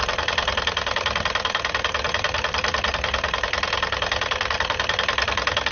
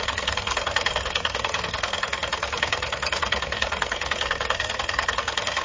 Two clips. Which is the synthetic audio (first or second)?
second